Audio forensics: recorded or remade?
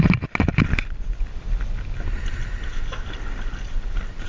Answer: recorded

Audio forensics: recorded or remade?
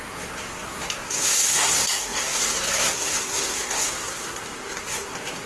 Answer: remade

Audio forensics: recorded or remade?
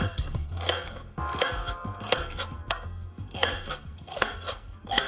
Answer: remade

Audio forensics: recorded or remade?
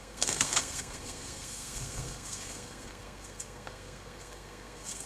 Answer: remade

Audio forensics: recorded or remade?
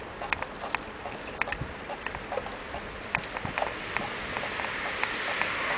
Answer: recorded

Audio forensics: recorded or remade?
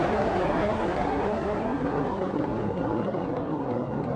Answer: remade